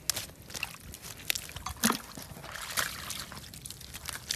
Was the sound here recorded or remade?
recorded